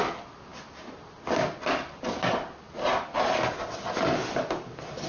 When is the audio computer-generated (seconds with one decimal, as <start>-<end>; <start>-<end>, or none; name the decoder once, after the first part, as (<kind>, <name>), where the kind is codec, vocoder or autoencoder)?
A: 0.5-1.9 (vocoder, BigVGAN v2)